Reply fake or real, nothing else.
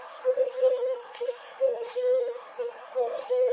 fake